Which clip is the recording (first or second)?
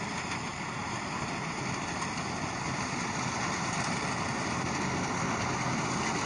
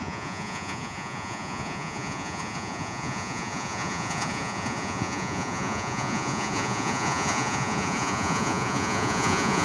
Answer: first